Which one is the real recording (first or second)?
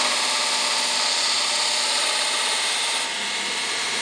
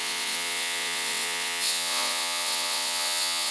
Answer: first